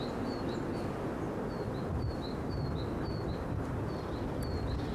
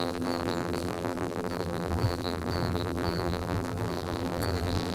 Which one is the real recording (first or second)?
first